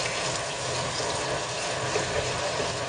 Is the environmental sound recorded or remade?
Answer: recorded